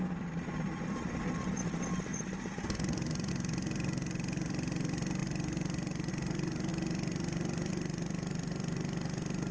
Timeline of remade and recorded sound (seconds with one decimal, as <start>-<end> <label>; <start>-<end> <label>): 0.0-9.5 recorded